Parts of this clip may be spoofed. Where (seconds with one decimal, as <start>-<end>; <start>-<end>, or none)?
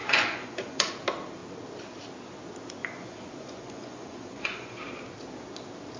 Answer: 0.0-0.9; 2.8-4.8